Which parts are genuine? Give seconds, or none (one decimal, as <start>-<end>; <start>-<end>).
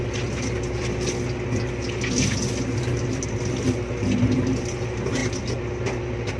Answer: 0.0-6.4